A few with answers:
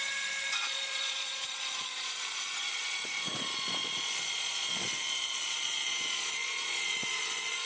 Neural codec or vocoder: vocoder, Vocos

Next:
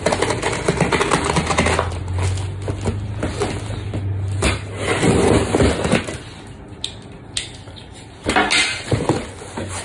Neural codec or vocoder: none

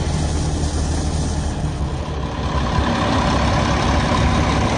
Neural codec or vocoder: none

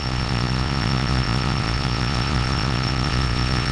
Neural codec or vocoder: vocoder, Vocos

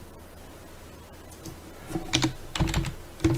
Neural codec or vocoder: none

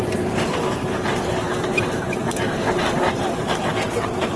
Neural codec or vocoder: vocoder, BigVGAN v2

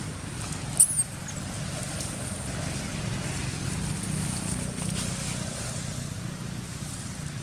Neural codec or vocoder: none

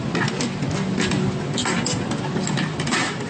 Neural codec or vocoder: none